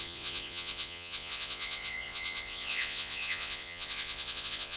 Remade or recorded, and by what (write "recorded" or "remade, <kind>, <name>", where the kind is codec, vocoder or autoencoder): remade, vocoder, Vocos